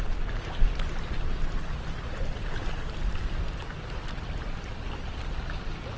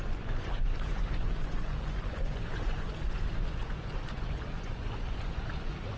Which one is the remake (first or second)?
second